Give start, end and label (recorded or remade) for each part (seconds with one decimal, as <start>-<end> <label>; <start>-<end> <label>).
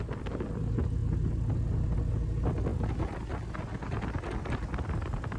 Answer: 0.0-5.4 recorded